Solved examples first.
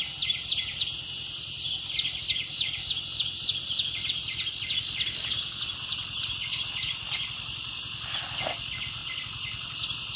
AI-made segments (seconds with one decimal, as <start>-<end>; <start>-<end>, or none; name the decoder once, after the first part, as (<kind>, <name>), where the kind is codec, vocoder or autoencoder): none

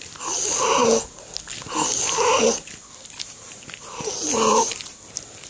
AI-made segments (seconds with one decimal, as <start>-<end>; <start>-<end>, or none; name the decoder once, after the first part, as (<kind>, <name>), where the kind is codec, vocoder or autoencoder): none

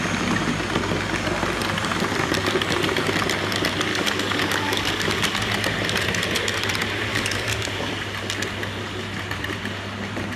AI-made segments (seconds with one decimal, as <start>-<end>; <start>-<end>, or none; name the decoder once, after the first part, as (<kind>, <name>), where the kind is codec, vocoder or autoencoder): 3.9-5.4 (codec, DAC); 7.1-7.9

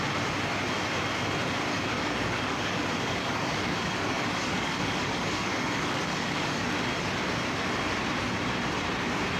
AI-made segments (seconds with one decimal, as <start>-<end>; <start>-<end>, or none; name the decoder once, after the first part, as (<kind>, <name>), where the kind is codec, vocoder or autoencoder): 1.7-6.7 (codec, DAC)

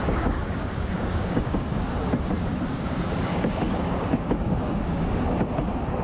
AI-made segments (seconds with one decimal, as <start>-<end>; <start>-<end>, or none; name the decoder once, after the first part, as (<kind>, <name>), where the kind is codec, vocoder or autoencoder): 0.0-1.8 (codec, DAC); 3.3-5.2

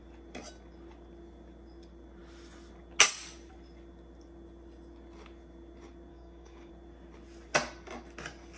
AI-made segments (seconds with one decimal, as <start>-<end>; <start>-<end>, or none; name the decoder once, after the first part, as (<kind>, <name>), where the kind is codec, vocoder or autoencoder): 6.1-6.7 (codec, DAC)

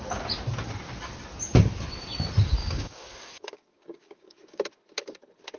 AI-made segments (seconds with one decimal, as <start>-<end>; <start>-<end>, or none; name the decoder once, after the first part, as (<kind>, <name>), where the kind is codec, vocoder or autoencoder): 2.6-4.6 (codec, DAC)

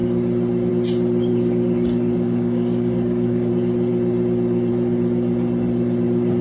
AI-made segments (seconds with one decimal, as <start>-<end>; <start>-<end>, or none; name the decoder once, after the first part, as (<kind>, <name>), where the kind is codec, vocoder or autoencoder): 1.3-3.5 (codec, DAC)